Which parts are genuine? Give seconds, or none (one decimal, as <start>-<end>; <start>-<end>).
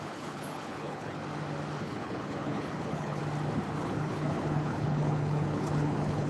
1.2-1.8; 3.2-3.8